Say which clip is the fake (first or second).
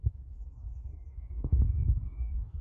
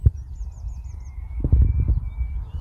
first